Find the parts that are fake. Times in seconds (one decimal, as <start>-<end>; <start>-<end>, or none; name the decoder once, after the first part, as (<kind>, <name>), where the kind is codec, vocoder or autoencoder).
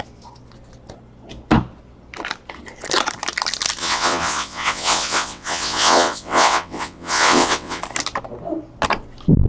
3.8-7.8 (vocoder, WaveNeXt)